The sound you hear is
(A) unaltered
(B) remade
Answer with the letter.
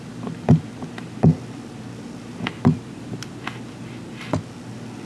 A